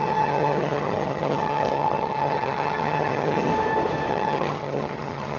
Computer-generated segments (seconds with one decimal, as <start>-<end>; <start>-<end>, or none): 0.0-3.5; 4.1-5.4